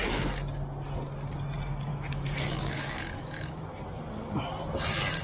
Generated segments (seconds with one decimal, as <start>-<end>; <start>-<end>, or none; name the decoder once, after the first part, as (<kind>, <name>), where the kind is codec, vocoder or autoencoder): 1.9-3.8 (autoencoder, DAC-VAE)